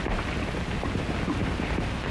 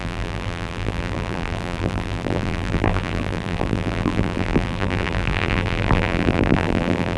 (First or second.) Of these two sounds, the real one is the first